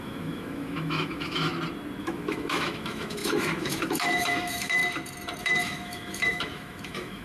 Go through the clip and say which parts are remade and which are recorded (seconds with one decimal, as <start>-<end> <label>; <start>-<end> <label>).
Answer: 0.0-1.5 remade; 1.5-2.0 recorded; 2.0-4.8 remade; 4.8-5.4 recorded; 5.4-7.2 remade